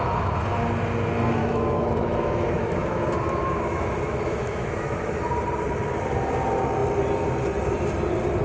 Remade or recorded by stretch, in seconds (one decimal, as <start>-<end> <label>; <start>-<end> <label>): 0.0-1.4 recorded; 1.4-5.2 remade; 5.2-8.4 recorded